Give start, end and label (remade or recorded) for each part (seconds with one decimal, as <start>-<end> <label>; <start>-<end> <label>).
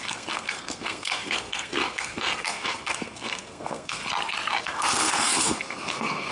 0.0-4.0 remade; 4.0-4.6 recorded; 4.6-6.3 remade